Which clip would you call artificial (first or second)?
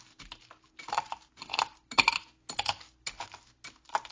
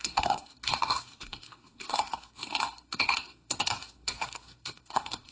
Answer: second